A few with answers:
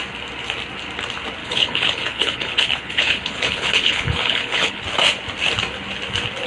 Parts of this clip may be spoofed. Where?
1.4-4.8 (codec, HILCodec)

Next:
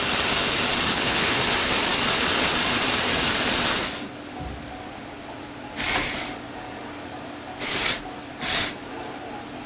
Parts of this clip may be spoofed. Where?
0.9-1.4 (codec, HILCodec)

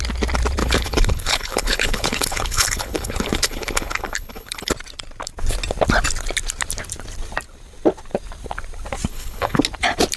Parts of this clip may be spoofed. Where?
0.6-4.7 (codec, HILCodec); 9.1-9.6

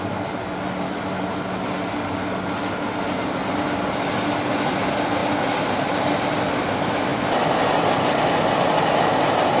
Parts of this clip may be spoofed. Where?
none

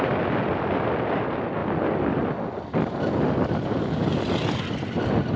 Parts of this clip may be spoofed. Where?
none